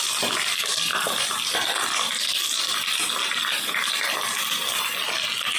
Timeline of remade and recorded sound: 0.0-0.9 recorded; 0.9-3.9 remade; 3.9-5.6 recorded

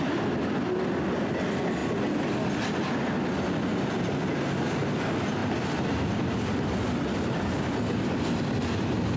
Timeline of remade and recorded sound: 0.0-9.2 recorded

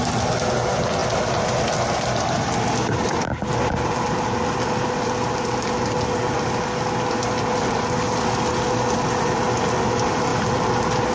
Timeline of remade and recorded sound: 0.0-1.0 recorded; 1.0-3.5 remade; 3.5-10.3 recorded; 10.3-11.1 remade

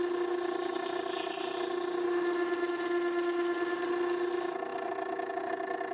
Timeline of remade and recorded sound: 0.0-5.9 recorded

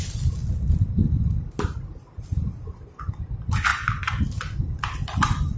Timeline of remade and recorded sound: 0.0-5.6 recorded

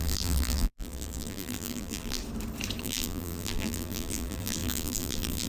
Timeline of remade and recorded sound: 0.0-2.2 remade; 2.2-2.8 recorded; 2.8-5.5 remade

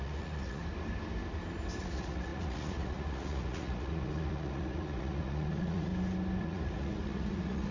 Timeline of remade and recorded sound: 0.0-0.6 remade; 0.6-1.8 recorded; 1.8-5.9 remade; 5.9-6.4 recorded; 6.4-7.7 remade